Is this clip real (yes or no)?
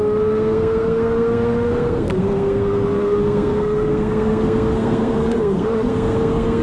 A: no